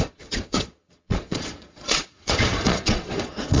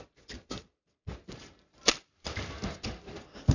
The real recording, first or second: second